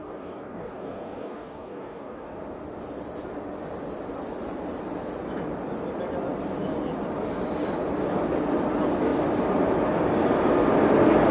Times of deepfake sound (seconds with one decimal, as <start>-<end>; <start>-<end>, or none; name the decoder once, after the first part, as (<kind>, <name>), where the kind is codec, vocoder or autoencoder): 0.0-2.4 (codec, DAC)